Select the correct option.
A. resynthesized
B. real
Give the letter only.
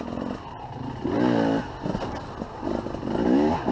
B